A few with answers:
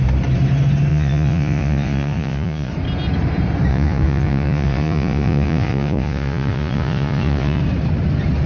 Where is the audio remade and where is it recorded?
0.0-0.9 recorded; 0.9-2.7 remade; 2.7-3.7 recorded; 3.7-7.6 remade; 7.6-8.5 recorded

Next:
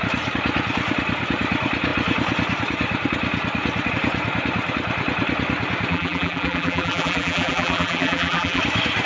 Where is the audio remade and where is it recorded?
0.0-5.9 recorded; 5.9-8.6 remade; 8.6-9.1 recorded

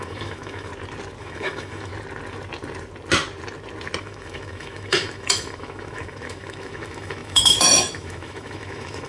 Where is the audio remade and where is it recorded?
0.0-0.7 remade; 0.7-1.2 recorded; 1.2-1.9 remade; 1.9-4.0 recorded; 4.0-9.1 remade

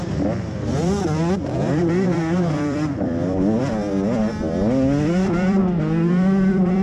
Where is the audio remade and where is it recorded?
0.0-3.6 remade; 3.6-5.1 recorded; 5.1-5.6 remade; 5.6-6.1 recorded; 6.1-6.8 remade

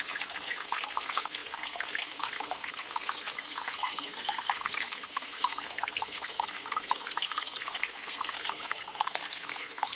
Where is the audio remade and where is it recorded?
0.0-10.0 remade

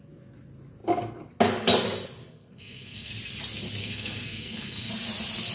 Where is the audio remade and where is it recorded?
0.0-2.2 recorded; 2.2-3.1 remade; 3.1-3.8 recorded; 3.8-4.9 remade; 4.9-5.5 recorded

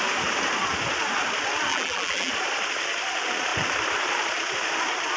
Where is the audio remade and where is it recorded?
0.0-1.7 recorded; 1.7-2.3 remade; 2.3-5.2 recorded

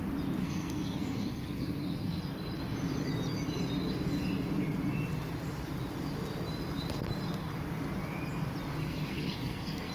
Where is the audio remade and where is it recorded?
0.0-0.4 recorded; 0.4-2.2 remade; 2.2-8.8 recorded; 8.8-9.9 remade